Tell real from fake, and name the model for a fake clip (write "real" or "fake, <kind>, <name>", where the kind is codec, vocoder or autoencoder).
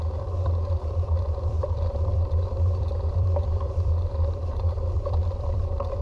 fake, vocoder, BigVGAN v2